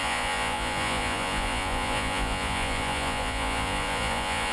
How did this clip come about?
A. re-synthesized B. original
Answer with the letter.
A